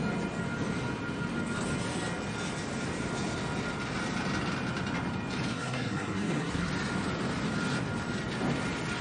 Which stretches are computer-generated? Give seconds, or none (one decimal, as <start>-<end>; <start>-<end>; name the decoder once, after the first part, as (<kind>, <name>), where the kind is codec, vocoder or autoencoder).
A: 5.5-6.7 (codec, SNAC)